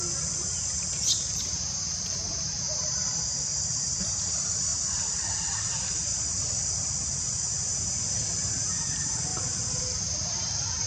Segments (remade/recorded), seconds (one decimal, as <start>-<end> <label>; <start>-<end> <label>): 0.0-7.7 remade; 7.7-8.8 recorded; 8.8-10.9 remade